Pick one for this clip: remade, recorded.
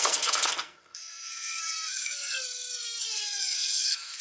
remade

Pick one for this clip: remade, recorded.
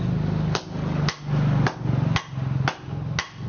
recorded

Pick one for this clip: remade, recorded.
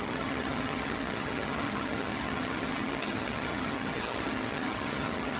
remade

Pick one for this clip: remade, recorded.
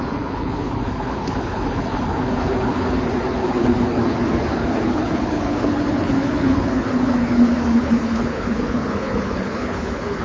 remade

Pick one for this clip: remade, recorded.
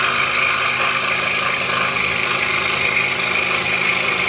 recorded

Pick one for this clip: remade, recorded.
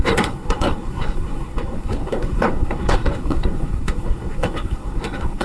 remade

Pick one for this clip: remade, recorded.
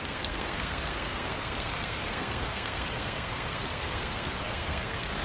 remade